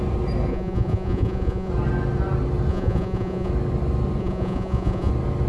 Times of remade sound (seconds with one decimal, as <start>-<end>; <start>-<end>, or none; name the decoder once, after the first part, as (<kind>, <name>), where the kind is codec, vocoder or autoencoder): 0.5-1.7 (vocoder, Vocos); 2.7-3.5; 4.2-5.1